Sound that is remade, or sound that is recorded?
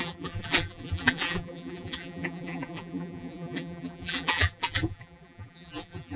remade